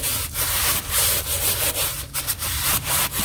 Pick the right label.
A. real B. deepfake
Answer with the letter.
B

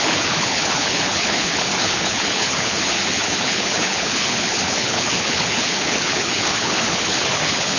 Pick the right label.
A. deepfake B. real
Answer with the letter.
A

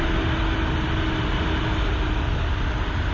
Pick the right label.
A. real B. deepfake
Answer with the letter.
A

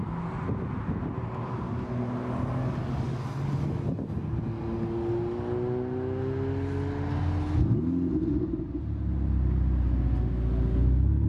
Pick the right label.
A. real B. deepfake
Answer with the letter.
A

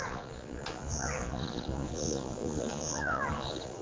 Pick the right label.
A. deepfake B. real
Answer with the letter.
A